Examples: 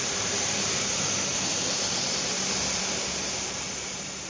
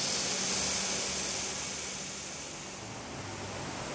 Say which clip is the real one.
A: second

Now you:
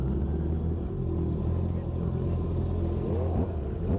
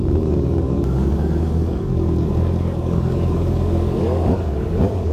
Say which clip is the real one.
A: first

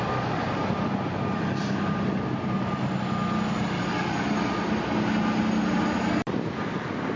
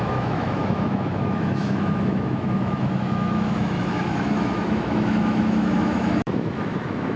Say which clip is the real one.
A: first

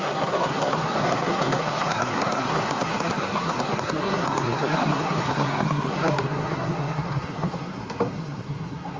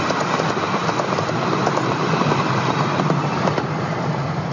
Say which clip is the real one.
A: second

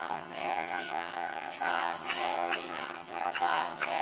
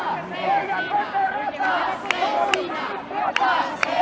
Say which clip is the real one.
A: second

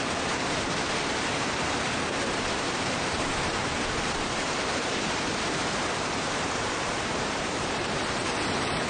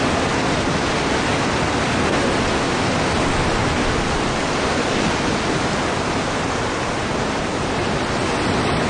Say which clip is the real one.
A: second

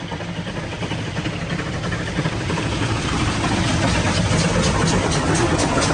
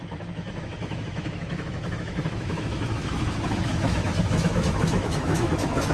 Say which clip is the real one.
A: first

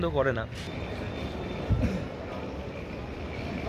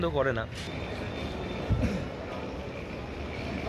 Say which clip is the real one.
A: second